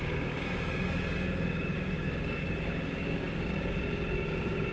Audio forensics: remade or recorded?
remade